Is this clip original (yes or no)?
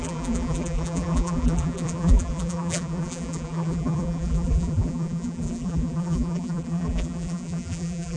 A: no